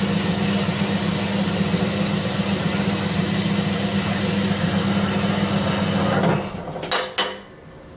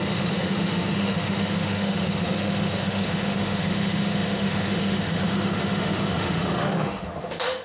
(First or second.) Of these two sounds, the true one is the first